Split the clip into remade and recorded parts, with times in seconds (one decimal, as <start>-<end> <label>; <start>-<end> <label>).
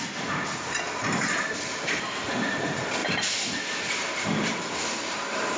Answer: 0.0-5.6 recorded